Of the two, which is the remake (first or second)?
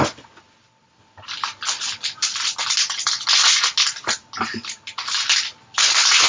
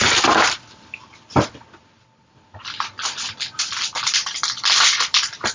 second